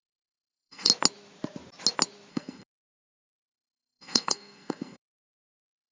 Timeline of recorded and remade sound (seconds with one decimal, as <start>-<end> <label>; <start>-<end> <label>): 0.0-0.9 remade; 0.9-2.3 recorded; 2.3-5.9 remade